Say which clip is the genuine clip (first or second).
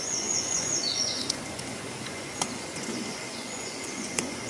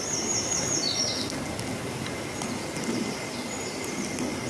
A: second